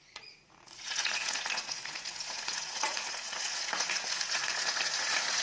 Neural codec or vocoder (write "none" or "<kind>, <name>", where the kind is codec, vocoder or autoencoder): vocoder, Vocos